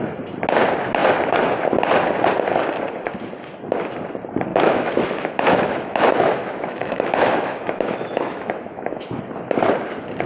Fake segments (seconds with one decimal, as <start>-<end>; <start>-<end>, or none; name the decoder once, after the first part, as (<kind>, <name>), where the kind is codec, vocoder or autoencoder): 4.5-9.2 (autoencoder, DAC-VAE)